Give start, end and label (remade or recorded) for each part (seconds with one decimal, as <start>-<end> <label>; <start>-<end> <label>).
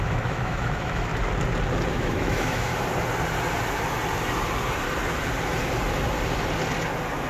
0.0-1.1 remade; 1.1-1.9 recorded; 1.9-2.7 remade; 2.7-7.3 recorded